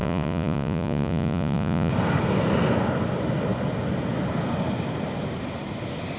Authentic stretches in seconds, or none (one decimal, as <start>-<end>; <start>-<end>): 1.9-6.2